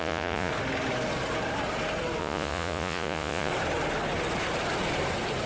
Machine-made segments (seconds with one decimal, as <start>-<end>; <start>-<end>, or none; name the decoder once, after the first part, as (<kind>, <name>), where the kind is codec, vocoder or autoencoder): 0.0-0.5 (vocoder, Vocos); 2.2-3.5